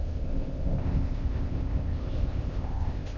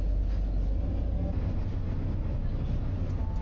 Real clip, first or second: second